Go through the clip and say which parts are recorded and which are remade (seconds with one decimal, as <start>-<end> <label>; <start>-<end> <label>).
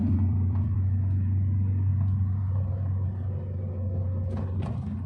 0.0-0.9 remade; 0.9-5.1 recorded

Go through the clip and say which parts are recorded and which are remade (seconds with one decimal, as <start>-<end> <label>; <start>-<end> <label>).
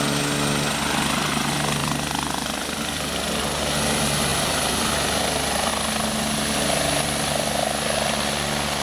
0.0-1.8 recorded; 1.8-3.4 remade; 3.4-4.3 recorded; 4.3-5.7 remade; 5.7-8.8 recorded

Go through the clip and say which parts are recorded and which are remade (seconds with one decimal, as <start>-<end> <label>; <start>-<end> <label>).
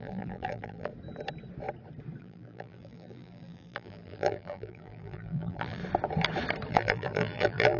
0.0-0.9 remade; 0.9-2.2 recorded; 2.2-5.8 remade; 5.8-6.7 recorded; 6.7-7.8 remade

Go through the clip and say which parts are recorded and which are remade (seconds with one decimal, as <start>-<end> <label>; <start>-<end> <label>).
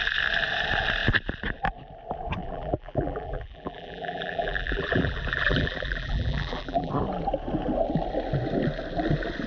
0.0-2.4 recorded; 2.4-6.9 remade; 6.9-9.5 recorded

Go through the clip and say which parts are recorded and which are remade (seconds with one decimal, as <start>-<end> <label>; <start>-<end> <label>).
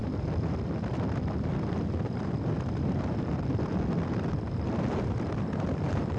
0.0-6.2 remade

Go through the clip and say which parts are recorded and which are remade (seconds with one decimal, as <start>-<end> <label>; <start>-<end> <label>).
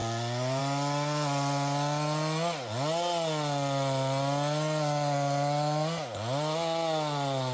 0.0-7.5 recorded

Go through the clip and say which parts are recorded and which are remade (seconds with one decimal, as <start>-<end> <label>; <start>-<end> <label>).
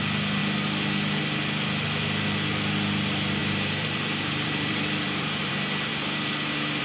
0.0-3.4 recorded; 3.4-5.5 remade; 5.5-6.8 recorded